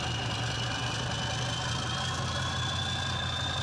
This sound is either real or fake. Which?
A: real